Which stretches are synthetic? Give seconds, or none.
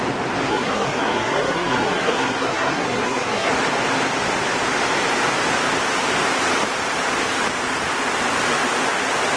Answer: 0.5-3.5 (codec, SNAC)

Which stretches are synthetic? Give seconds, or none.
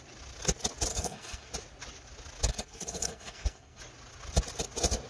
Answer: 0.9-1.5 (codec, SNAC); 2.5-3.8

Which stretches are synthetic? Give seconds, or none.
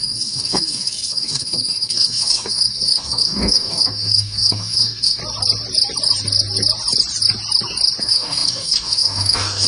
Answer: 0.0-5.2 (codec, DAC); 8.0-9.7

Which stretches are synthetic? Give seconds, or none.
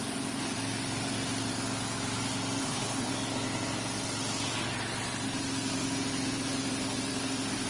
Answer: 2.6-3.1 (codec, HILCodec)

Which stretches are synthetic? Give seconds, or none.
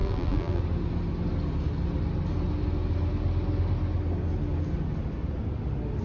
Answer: 0.0-0.6 (vocoder, BigVGAN v2)